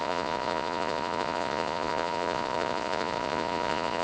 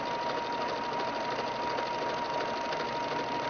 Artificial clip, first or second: first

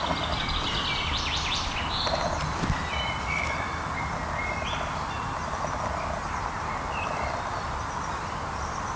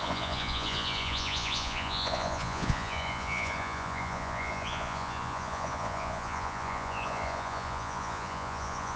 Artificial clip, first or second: second